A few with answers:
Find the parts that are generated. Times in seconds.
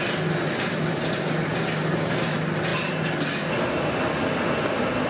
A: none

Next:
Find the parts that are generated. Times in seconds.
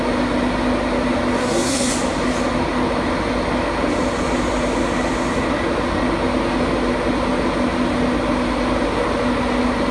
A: 1.4-1.9 (codec, SNAC)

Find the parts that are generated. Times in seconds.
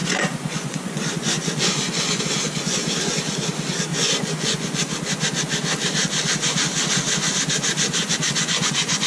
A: 0.0-2.2 (vocoder, Vocos); 3.9-4.8; 8.0-9.1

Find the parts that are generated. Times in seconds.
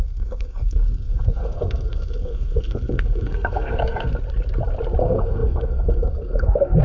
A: 0.0-4.1 (codec, SNAC); 5.0-6.8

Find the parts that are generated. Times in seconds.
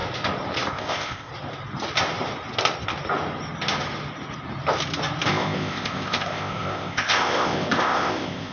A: 0.7-1.3 (codec, ZipCodec); 5.3-8.5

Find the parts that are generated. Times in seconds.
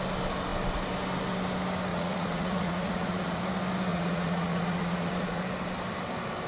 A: 1.9-3.4 (vocoder, Vocos); 3.9-5.4